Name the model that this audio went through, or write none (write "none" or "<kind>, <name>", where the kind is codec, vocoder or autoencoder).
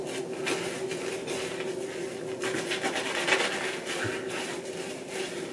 none